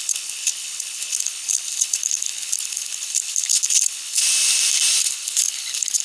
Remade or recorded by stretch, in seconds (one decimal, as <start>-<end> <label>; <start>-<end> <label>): 0.0-4.2 remade; 4.2-5.0 recorded; 5.0-6.0 remade